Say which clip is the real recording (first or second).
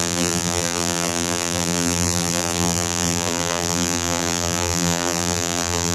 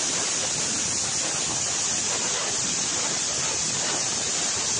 second